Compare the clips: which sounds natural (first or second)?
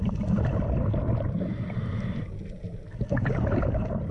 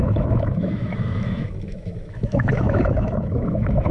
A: first